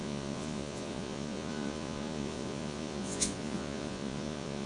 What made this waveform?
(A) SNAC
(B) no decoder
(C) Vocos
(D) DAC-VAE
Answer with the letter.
C